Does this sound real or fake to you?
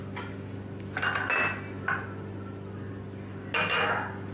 real